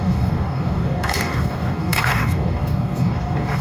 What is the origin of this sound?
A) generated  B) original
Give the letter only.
A